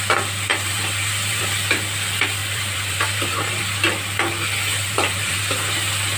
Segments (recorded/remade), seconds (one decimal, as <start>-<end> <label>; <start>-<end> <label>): 0.0-0.5 recorded; 0.5-1.4 remade; 1.4-2.4 recorded; 2.4-3.6 remade; 3.6-4.7 recorded; 4.7-5.4 remade; 5.4-6.2 recorded